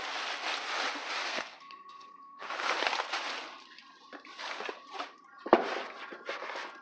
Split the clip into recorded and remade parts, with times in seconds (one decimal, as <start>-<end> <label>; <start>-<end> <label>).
0.0-1.3 recorded; 1.3-2.5 remade; 2.5-6.8 recorded